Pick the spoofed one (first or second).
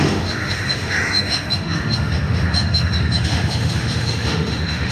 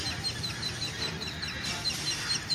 first